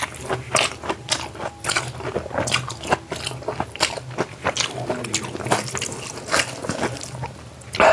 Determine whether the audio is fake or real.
real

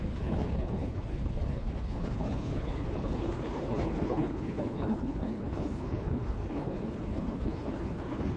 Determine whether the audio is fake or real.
fake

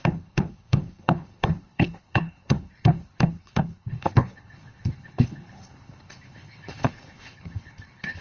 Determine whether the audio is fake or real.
fake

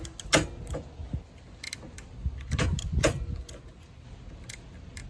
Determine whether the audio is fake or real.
real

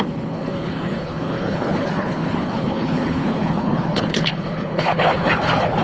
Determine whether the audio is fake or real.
fake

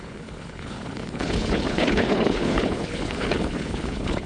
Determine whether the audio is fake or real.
fake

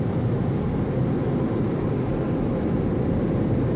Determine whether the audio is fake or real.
real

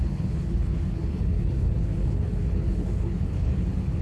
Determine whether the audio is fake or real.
fake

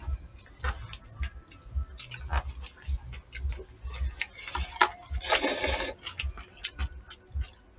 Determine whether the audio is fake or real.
real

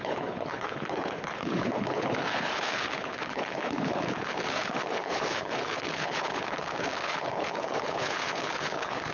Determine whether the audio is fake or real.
fake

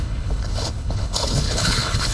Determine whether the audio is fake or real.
fake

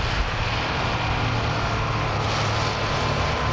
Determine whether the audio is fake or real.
real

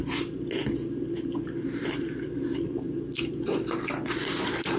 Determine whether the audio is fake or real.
real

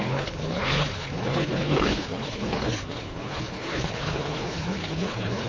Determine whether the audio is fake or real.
fake